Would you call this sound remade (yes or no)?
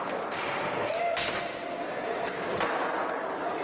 no